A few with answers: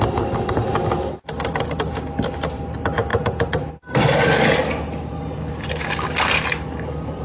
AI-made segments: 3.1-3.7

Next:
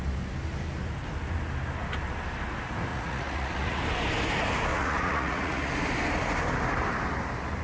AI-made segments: 2.9-3.8; 4.7-5.7

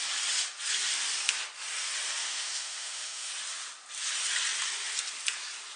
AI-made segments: 2.2-3.3

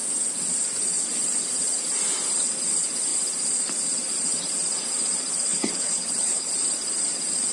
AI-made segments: 5.5-6.5

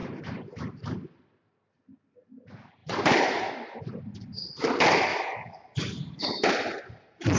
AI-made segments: 0.0-0.8; 2.8-3.5; 5.1-7.4

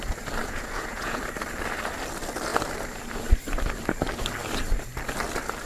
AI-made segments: 0.4-1.2

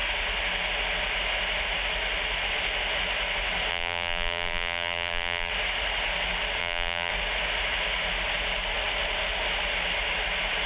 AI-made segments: 3.7-5.5; 6.6-7.1

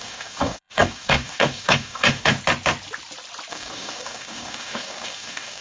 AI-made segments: 0.0-2.4; 3.5-5.6